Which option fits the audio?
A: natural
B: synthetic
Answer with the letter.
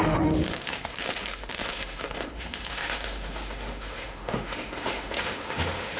B